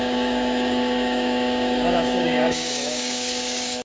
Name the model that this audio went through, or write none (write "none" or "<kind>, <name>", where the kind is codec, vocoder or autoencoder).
codec, DAC